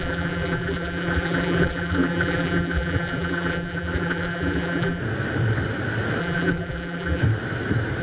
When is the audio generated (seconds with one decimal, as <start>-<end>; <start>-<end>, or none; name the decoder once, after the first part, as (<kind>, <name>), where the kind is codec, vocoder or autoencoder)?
0.0-5.0 (vocoder, BigVGAN v2); 6.2-7.2